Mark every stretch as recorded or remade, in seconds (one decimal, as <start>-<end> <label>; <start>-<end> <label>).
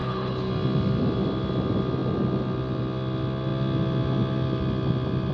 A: 0.0-0.5 remade; 0.5-5.3 recorded